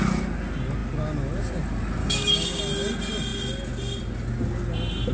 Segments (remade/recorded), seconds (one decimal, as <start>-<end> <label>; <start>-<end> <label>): 0.0-2.0 recorded; 2.0-2.6 remade; 2.6-5.1 recorded